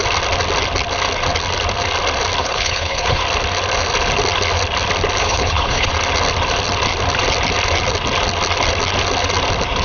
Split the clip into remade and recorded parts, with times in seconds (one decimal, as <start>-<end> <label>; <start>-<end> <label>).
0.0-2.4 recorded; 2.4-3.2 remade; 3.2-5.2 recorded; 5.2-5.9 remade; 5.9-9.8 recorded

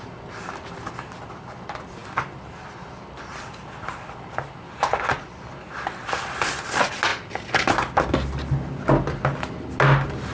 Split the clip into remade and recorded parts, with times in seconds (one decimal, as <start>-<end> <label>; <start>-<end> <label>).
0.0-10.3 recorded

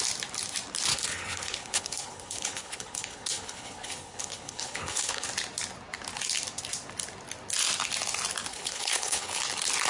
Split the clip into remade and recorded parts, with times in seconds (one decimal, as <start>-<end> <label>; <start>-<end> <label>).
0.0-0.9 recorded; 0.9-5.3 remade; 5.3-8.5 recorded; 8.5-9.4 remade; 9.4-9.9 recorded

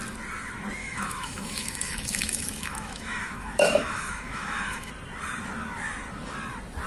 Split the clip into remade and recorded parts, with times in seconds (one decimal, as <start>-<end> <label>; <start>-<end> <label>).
0.0-0.8 recorded; 0.8-4.9 remade; 4.9-6.9 recorded